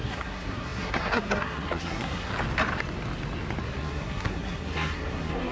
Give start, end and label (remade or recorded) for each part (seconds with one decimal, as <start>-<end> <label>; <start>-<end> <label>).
0.0-2.3 remade; 2.3-3.6 recorded; 3.6-5.5 remade